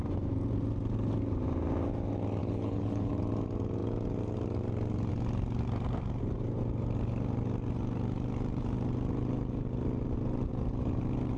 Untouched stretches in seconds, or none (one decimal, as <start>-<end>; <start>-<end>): 0.0-2.4; 3.1-11.4